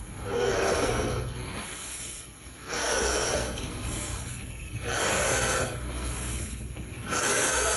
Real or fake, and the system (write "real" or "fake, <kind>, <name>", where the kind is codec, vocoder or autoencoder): fake, codec, SNAC